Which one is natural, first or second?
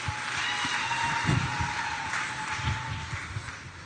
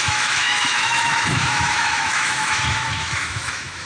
first